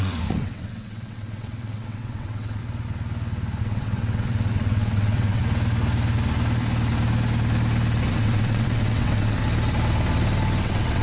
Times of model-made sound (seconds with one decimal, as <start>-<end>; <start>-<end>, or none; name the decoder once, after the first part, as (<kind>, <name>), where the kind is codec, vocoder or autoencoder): 0.0-2.6 (vocoder, WaveNeXt); 3.6-5.4; 8.1-9.4; 10.6-11.0